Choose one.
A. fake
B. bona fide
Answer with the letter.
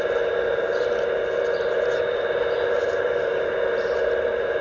B